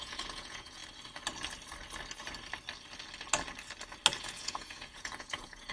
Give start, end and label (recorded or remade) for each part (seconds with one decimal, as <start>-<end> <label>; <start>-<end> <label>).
0.0-0.8 remade; 0.8-4.2 recorded; 4.2-5.7 remade